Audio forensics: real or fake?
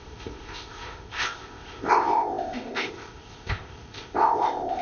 fake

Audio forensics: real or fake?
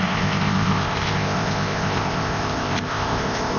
fake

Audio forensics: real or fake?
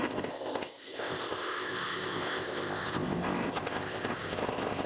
fake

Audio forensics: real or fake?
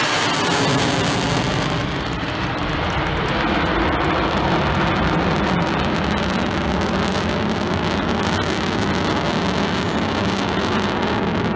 real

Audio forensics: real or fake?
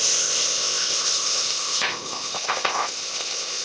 fake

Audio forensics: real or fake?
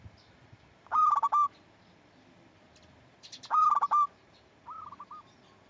real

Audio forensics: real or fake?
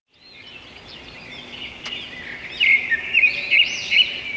real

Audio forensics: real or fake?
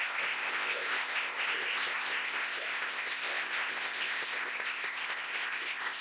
fake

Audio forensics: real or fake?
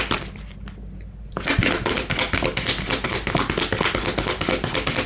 real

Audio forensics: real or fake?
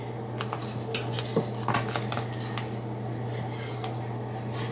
real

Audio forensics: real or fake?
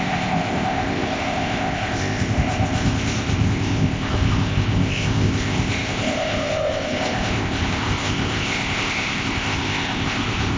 fake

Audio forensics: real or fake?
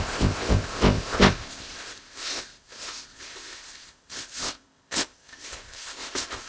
fake